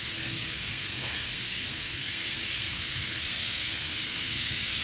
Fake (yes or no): yes